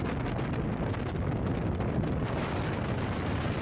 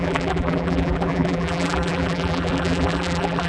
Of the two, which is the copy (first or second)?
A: second